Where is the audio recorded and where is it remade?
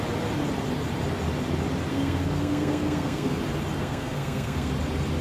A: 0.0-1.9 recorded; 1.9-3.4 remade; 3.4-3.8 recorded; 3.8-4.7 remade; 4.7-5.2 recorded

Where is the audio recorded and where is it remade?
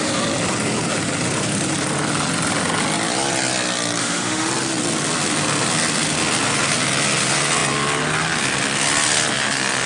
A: 0.0-4.0 recorded; 4.0-4.5 remade; 4.5-9.9 recorded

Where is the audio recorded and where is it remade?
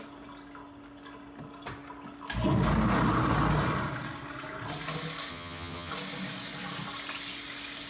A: 0.0-5.3 recorded; 5.3-5.9 remade; 5.9-7.9 recorded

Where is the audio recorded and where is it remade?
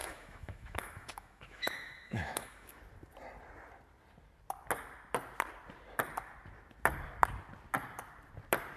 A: 0.0-2.8 remade; 2.8-8.8 recorded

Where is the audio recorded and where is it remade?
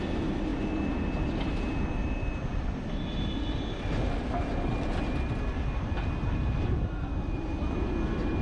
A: 0.0-8.4 recorded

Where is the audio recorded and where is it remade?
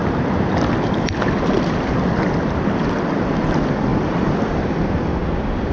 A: 0.0-3.9 recorded; 3.9-5.3 remade; 5.3-5.7 recorded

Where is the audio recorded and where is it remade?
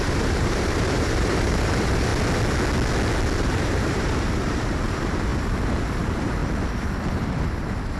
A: 0.0-2.1 remade; 2.1-3.4 recorded; 3.4-6.4 remade; 6.4-7.1 recorded; 7.1-8.0 remade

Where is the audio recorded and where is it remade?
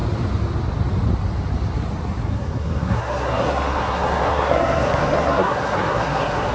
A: 0.0-2.3 recorded; 2.3-6.5 remade